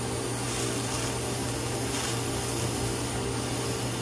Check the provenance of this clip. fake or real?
real